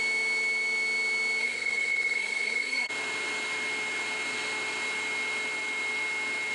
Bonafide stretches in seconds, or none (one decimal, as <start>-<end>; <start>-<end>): 0.0-1.4; 2.9-6.5

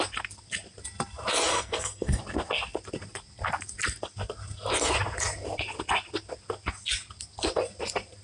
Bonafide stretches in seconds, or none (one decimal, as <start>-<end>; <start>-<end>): 0.0-1.5; 2.2-8.2

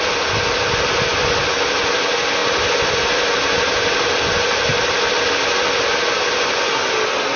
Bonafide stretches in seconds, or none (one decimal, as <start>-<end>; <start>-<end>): 0.0-7.4

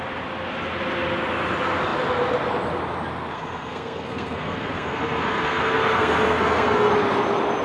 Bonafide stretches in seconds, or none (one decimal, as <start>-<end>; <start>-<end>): 0.0-3.3; 6.9-7.6

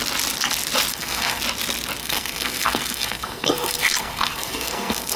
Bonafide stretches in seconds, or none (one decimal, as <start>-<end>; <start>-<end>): 0.0-0.9; 1.4-2.0